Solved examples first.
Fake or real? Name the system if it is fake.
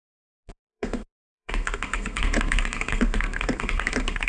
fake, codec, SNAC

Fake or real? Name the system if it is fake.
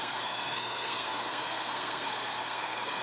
fake, codec, SNAC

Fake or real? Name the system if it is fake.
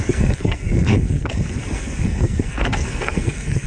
fake, codec, SNAC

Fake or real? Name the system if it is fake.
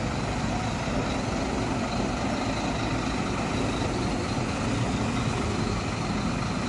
real